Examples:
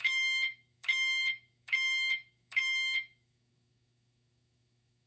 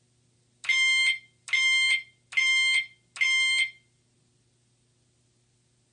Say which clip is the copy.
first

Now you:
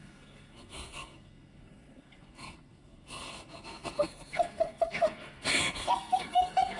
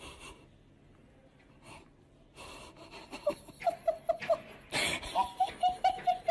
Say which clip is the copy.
first